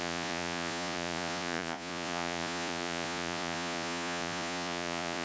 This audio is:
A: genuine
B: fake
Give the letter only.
B